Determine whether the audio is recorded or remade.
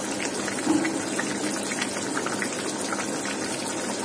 recorded